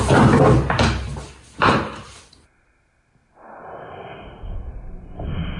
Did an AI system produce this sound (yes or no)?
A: no